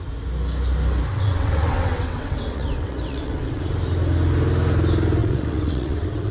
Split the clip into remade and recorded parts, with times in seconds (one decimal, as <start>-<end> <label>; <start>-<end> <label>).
0.0-1.1 recorded; 1.1-3.7 remade; 3.7-5.2 recorded; 5.2-6.3 remade